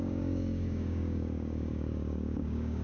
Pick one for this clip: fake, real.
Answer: fake